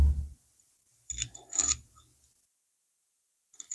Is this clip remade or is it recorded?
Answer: recorded